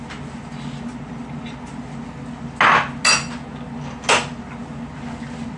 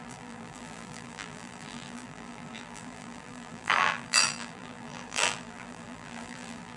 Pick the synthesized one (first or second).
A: second